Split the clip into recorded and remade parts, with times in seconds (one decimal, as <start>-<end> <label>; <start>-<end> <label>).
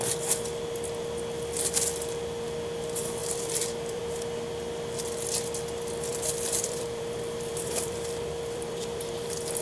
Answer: 0.0-3.2 recorded; 3.2-4.0 remade; 4.0-6.1 recorded; 6.1-9.0 remade; 9.0-9.6 recorded